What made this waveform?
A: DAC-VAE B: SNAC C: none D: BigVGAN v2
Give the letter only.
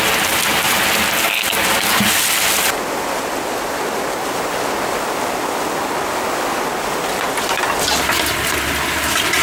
C